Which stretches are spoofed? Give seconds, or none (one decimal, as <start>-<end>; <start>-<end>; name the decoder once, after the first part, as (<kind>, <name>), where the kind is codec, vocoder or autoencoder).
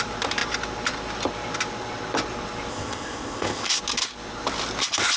2.7-3.8 (codec, ZipCodec)